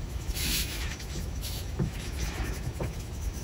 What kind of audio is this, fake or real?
fake